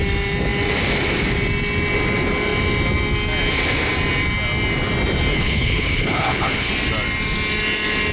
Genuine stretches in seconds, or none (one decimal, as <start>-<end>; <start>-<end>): 0.0-5.3; 6.7-8.1